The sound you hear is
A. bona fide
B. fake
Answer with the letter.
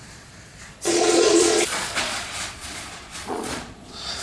B